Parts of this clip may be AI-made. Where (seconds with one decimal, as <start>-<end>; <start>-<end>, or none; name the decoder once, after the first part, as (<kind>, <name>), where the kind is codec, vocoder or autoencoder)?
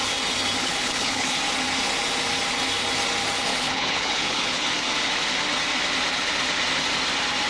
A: 0.6-1.4 (codec, HILCodec); 3.5-4.7